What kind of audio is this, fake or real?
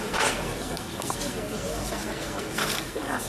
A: fake